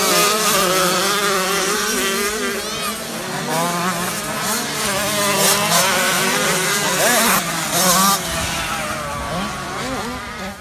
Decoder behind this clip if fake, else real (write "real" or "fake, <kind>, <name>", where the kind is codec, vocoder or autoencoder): real